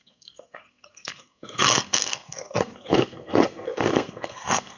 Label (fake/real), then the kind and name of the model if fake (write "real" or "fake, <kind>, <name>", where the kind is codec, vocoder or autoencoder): fake, codec, SNAC